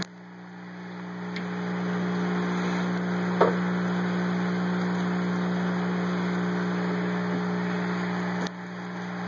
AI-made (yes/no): no